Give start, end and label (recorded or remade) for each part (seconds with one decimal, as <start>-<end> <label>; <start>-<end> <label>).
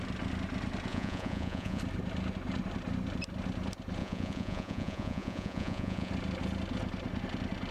0.0-0.9 recorded; 0.9-1.8 remade; 1.8-4.0 recorded; 4.0-6.1 remade; 6.1-7.7 recorded